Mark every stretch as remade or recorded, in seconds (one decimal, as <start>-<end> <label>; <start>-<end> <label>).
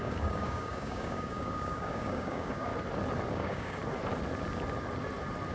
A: 0.0-2.7 remade; 2.7-3.3 recorded; 3.3-3.8 remade; 3.8-5.5 recorded